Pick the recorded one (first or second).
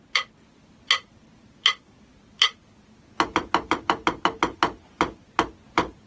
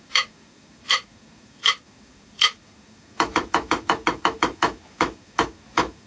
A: first